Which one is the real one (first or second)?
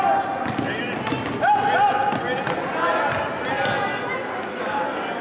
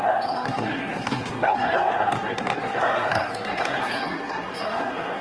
first